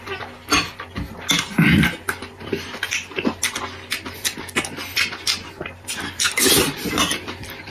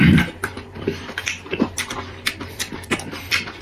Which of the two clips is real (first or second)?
first